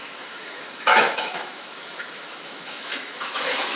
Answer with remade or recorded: remade